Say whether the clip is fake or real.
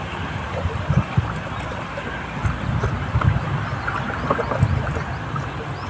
real